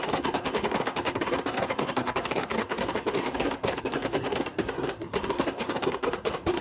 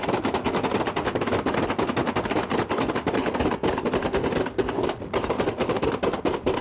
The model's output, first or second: first